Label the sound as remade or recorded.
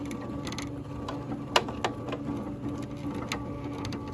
recorded